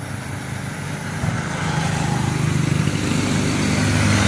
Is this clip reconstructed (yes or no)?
no